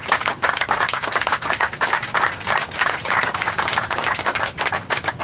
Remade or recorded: remade